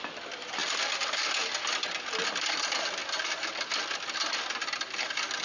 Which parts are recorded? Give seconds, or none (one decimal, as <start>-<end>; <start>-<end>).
0.0-5.4